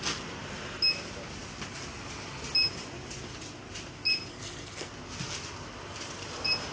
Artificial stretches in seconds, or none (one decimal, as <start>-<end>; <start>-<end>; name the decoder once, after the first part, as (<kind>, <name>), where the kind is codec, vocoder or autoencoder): 4.3-4.9 (codec, SNAC)